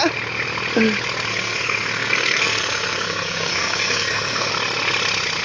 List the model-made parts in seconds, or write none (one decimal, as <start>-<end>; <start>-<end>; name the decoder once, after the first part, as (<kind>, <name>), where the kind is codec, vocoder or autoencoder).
1.3-4.5 (codec, SNAC)